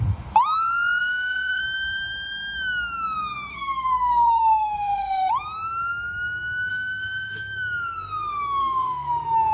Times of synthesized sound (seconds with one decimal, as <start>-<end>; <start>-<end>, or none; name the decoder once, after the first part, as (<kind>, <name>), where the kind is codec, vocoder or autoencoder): 1.0-1.6 (codec, SNAC); 3.5-5.3; 6.7-7.4; 8.6-9.1